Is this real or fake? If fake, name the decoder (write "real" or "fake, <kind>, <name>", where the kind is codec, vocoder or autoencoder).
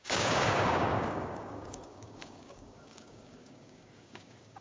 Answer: fake, codec, DAC